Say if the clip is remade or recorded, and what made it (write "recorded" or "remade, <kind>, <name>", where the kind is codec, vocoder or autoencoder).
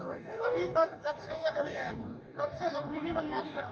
remade, codec, DAC